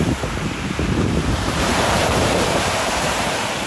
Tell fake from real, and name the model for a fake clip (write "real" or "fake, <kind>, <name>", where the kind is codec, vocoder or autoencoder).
fake, vocoder, BigVGAN v2